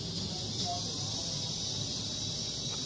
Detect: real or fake real